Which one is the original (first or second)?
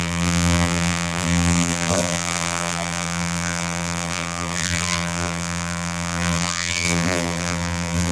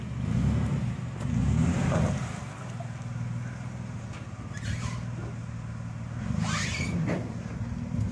second